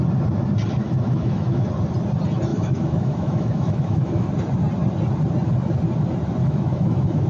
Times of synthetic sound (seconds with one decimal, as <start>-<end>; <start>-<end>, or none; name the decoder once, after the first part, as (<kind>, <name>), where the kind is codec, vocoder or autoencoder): 0.8-1.7 (autoencoder, DAC-VAE); 2.5-4.3; 6.4-7.3